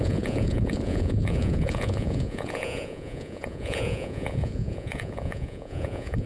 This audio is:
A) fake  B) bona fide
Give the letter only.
A